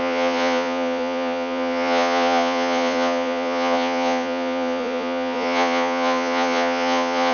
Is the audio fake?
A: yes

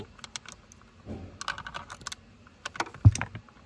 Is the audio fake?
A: no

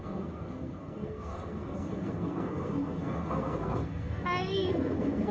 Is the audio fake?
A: yes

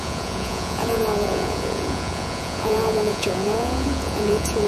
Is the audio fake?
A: yes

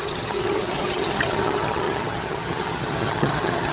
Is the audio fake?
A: yes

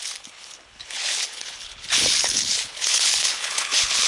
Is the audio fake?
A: yes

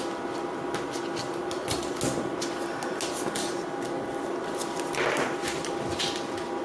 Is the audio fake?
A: no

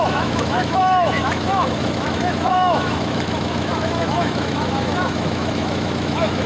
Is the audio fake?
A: yes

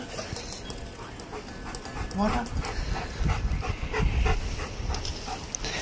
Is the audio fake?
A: no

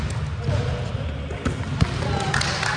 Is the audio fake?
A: no